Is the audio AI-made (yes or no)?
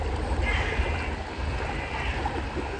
no